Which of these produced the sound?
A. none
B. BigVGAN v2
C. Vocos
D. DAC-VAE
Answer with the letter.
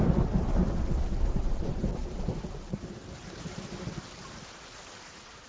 A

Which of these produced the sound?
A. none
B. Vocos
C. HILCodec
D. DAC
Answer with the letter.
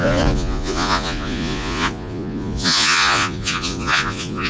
B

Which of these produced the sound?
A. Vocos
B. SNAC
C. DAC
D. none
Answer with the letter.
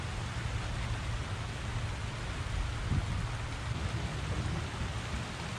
D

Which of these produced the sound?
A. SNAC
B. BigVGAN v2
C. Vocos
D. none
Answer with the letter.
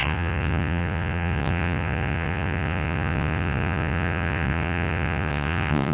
C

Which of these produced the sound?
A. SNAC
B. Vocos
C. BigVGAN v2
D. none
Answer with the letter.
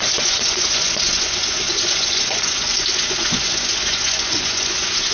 B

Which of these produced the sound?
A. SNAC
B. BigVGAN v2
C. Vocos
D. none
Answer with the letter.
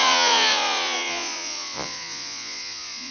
C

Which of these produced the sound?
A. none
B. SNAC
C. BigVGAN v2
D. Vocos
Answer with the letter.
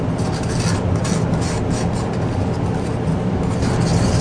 A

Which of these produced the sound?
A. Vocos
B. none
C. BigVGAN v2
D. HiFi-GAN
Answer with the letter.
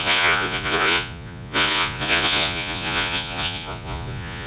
A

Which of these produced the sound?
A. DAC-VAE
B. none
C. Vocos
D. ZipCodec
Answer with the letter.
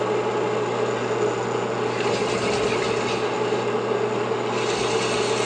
B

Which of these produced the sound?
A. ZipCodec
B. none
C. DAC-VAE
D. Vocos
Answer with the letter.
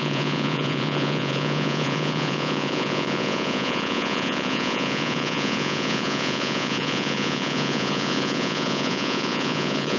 D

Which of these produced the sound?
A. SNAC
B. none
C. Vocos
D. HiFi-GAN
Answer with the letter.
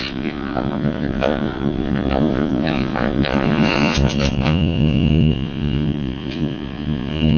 C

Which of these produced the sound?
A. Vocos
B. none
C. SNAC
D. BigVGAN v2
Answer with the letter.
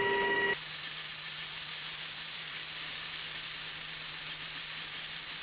B